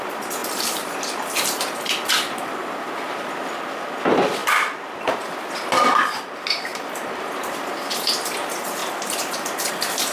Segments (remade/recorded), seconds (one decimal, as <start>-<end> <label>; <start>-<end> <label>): 0.0-6.7 recorded; 6.7-7.9 remade; 7.9-10.1 recorded